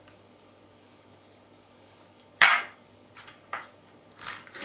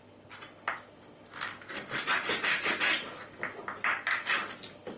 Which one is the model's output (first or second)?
first